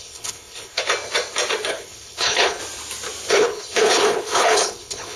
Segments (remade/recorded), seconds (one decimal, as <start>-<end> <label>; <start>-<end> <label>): 0.0-0.8 remade; 0.8-1.7 recorded; 1.7-2.6 remade; 2.6-3.3 recorded; 3.3-5.2 remade